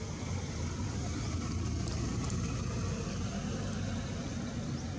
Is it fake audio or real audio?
real